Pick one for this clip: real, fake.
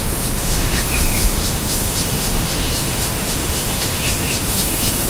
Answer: fake